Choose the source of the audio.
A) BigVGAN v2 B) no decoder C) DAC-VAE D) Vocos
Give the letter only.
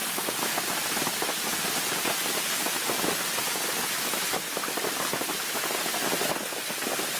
B